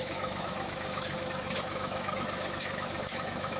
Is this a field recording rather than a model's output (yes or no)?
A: no